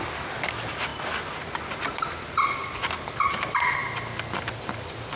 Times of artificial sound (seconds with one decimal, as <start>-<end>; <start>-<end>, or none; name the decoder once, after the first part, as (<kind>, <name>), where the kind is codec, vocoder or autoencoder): none